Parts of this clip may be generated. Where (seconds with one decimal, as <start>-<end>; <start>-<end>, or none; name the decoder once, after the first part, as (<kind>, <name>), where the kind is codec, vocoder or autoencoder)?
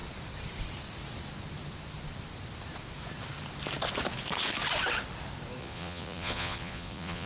5.6-7.3 (vocoder, Vocos)